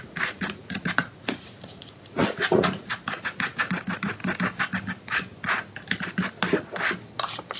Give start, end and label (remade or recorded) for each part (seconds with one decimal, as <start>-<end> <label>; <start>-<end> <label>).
0.0-4.2 remade; 4.2-7.6 recorded